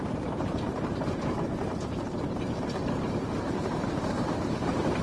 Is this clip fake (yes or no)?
yes